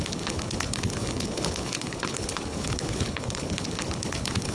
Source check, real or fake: fake